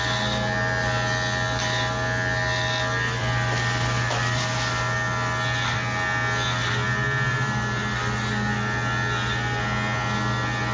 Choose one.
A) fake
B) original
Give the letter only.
B